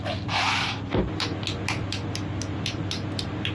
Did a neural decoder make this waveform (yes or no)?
no